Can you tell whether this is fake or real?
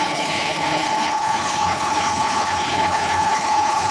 fake